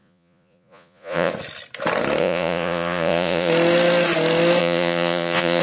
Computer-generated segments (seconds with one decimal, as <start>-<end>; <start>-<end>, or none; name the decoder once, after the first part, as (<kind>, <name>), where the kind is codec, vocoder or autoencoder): 0.0-1.3 (vocoder, Vocos); 2.2-3.5; 4.6-5.6